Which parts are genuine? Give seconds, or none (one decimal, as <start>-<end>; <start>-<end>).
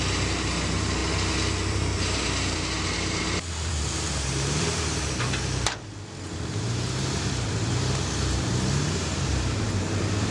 1.0-1.7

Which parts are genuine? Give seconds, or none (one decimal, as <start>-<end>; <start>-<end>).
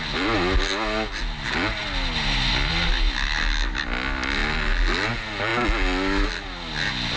0.0-7.2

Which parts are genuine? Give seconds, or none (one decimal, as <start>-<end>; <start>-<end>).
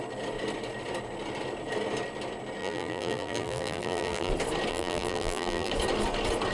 0.0-2.6; 4.3-4.7; 5.7-6.5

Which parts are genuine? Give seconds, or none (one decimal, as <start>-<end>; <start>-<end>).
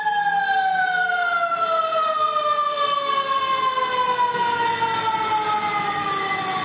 0.0-6.6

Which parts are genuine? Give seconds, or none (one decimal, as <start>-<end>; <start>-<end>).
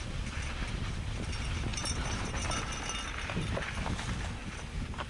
0.0-1.7; 2.6-5.1